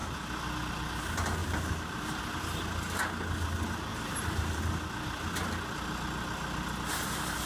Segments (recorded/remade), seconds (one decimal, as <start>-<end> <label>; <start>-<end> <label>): 0.0-1.4 recorded; 1.4-2.2 remade; 2.2-3.9 recorded; 3.9-4.6 remade; 4.6-7.5 recorded